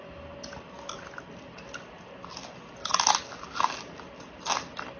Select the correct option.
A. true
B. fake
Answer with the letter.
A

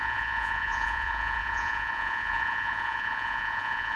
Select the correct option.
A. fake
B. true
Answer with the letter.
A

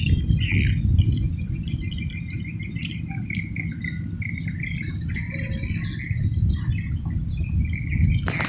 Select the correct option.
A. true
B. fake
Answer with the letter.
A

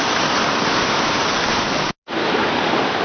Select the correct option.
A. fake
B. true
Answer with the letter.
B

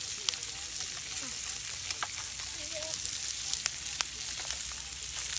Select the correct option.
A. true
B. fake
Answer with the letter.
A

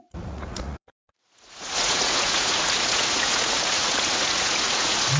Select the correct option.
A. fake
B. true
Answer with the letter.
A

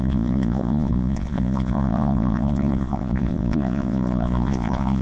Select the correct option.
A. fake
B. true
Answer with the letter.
A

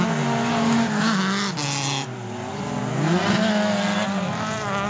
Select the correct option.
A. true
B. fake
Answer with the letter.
A